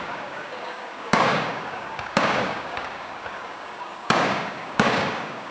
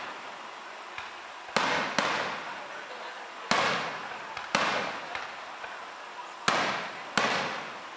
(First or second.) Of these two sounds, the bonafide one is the second